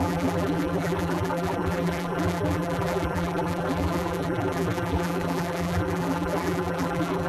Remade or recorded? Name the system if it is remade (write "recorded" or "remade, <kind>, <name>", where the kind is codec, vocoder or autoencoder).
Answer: remade, vocoder, BigVGAN v2